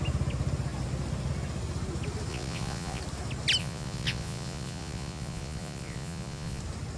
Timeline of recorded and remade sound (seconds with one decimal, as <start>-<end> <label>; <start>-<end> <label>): 0.0-2.3 recorded; 2.3-3.0 remade; 3.0-3.6 recorded; 3.6-6.6 remade; 6.6-7.0 recorded